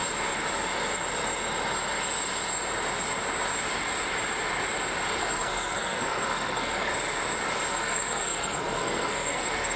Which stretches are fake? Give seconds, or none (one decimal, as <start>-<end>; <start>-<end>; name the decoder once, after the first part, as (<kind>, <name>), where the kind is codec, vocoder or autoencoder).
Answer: 5.2-6.9 (codec, SNAC); 7.7-9.8